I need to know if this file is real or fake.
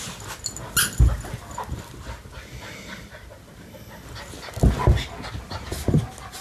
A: real